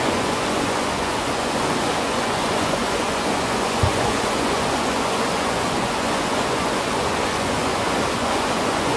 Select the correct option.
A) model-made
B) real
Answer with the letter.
A